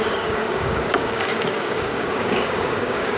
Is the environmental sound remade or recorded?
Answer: remade